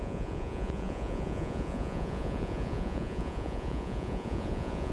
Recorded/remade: remade